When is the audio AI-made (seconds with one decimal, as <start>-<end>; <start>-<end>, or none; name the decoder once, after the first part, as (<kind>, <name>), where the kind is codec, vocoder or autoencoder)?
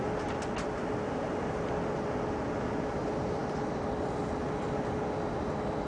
none